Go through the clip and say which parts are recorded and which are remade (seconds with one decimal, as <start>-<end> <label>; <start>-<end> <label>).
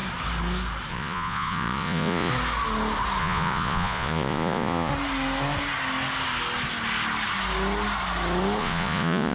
0.0-0.9 recorded; 0.9-2.3 remade; 2.3-3.2 recorded; 3.2-4.9 remade; 4.9-8.6 recorded; 8.6-9.3 remade